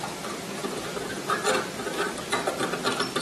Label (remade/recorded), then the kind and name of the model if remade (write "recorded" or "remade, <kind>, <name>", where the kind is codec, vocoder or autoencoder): remade, vocoder, BigVGAN v2